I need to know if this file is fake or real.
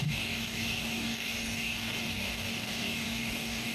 fake